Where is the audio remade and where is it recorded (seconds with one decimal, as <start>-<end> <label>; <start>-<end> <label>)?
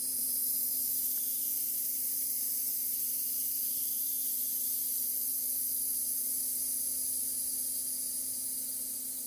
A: 0.0-9.3 recorded